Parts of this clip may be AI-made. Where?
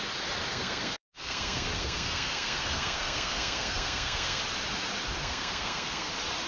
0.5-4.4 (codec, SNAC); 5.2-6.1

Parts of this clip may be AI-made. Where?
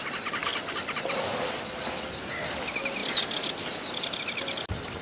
none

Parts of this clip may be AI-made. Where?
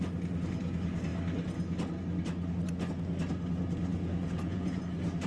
3.9-4.8 (vocoder, Vocos)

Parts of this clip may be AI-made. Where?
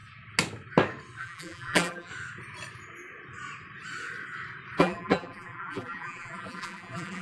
1.2-2.1 (vocoder, BigVGAN v2); 4.8-7.2